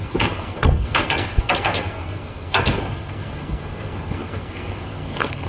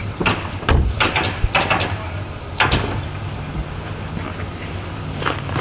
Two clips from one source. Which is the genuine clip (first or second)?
second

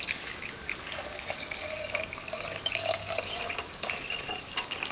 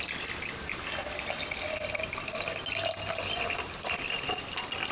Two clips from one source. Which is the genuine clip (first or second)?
second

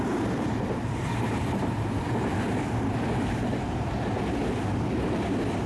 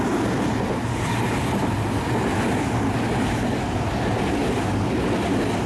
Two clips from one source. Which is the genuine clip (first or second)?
second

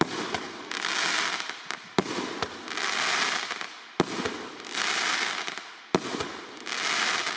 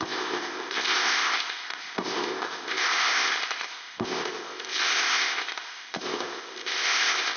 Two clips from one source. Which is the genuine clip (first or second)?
first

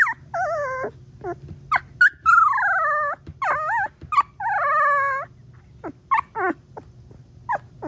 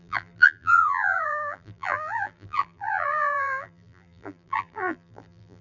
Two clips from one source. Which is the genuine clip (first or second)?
first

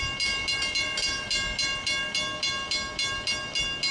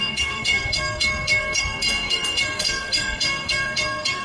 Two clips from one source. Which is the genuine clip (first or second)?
first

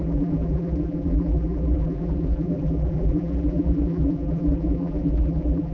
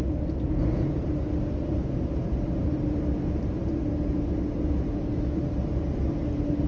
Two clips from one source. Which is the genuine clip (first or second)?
second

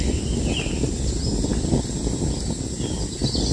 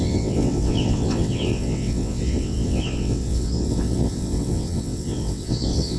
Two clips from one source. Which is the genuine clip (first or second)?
first